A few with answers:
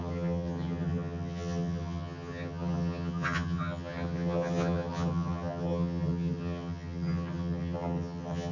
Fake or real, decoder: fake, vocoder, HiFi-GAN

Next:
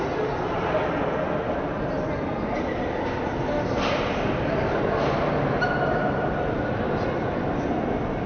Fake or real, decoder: real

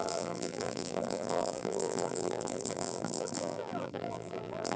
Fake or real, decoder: fake, vocoder, BigVGAN v2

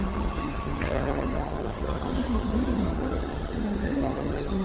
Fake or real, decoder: fake, vocoder, HiFi-GAN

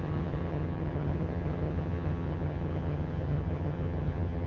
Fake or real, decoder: fake, vocoder, HiFi-GAN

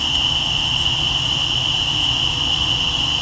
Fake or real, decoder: real